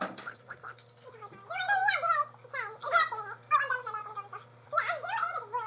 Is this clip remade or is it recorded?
remade